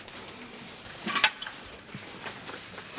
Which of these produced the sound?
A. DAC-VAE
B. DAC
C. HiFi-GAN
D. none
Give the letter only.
D